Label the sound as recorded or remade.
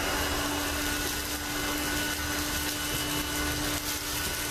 recorded